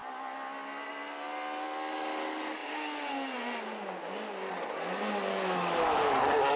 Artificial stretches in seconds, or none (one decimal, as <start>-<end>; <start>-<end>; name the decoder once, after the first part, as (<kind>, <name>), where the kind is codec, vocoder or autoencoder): 5.3-6.1 (autoencoder, DAC-VAE)